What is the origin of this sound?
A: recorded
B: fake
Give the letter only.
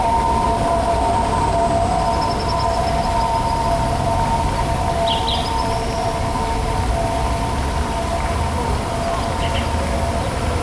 A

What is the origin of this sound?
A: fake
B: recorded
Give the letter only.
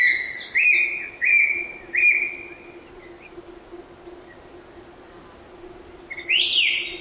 B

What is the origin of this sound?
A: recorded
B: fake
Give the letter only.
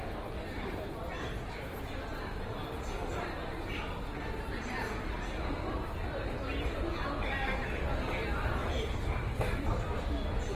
A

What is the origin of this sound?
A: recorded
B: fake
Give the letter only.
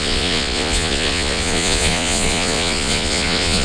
B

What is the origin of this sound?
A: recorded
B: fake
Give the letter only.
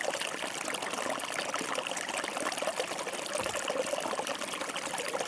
A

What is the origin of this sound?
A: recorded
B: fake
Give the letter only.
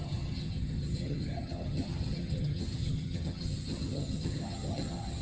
B